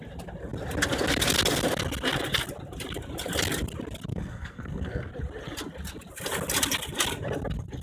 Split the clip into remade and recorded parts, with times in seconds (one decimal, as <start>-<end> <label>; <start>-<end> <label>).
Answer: 0.0-4.1 recorded; 4.1-5.1 remade; 5.1-7.8 recorded